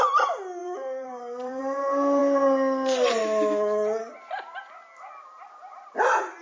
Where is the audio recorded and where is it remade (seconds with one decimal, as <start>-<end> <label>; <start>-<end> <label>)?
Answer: 0.0-0.6 recorded; 0.6-1.6 remade; 1.6-6.4 recorded